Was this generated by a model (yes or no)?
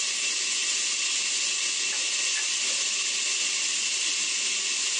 no